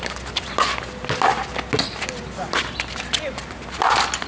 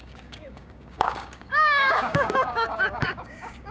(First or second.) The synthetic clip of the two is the second